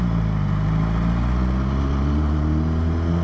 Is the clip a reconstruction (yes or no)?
no